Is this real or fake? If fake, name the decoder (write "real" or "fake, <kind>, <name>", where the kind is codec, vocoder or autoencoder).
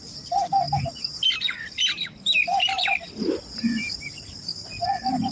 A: real